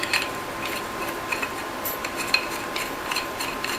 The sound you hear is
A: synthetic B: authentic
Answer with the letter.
A